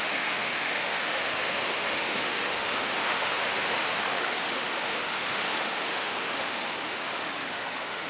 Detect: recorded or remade remade